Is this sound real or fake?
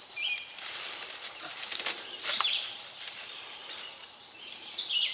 fake